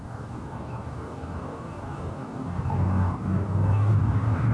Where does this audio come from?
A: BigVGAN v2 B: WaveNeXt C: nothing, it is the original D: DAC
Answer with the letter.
D